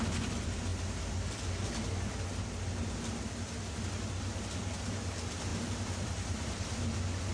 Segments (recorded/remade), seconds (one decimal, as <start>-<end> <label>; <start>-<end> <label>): 0.0-5.5 recorded; 5.5-6.8 remade; 6.8-7.3 recorded